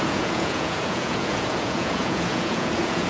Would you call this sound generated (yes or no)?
yes